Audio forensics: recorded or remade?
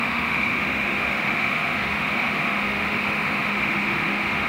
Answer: remade